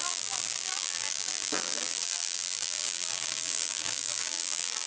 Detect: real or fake fake